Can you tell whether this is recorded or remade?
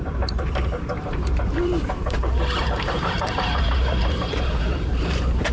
remade